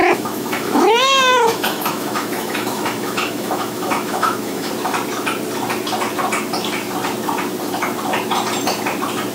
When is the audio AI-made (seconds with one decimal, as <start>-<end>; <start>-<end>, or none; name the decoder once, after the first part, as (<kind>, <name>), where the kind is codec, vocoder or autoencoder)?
0.0-4.7 (autoencoder, DAC-VAE)